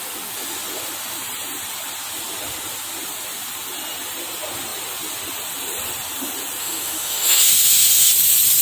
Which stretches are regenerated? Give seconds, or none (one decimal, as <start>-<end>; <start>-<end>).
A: 6.6-8.1